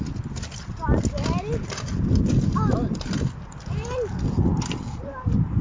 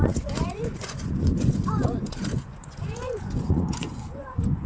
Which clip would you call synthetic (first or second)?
second